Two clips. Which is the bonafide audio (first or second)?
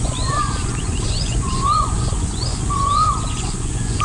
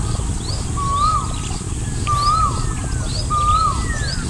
second